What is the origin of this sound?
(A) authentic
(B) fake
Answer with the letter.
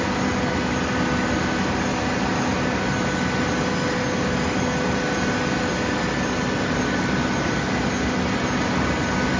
A